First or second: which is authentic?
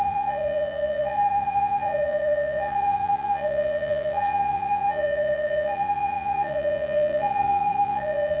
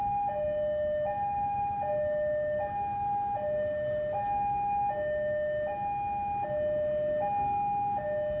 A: second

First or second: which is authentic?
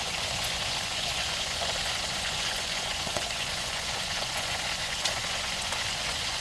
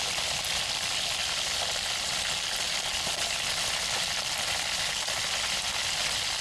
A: second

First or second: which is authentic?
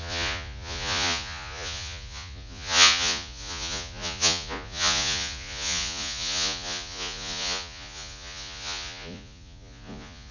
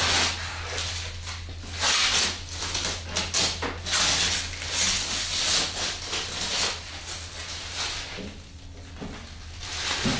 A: second